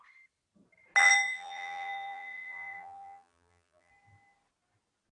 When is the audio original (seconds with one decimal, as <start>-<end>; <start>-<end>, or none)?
0.0-1.0; 3.9-5.1